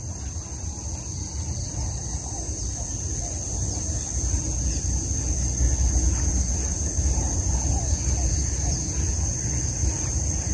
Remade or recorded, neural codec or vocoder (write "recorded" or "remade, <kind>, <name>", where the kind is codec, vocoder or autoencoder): recorded